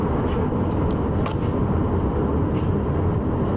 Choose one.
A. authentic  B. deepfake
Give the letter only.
A